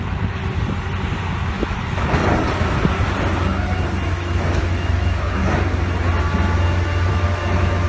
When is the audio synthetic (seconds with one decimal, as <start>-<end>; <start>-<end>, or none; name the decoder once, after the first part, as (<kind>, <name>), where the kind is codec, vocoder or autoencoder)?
0.0-0.4 (autoencoder, DAC-VAE); 1.5-2.2; 4.1-5.4; 7.1-7.9